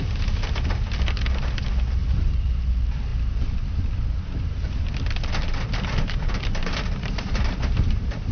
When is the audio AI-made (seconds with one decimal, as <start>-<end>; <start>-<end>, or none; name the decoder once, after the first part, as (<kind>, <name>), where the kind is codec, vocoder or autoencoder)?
2.0-2.7 (vocoder, BigVGAN v2); 6.6-8.3